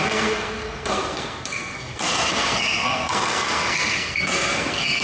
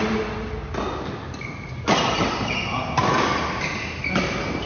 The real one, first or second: second